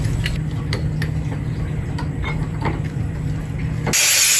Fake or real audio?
real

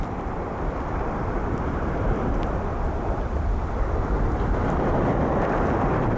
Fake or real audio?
fake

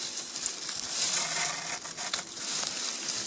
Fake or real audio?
real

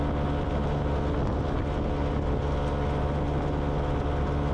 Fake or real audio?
real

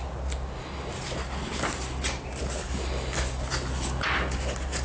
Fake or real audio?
real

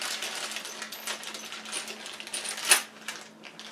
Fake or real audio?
real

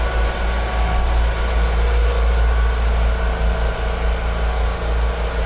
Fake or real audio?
real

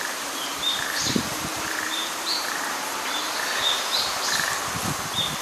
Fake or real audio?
fake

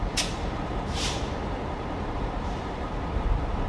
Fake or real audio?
fake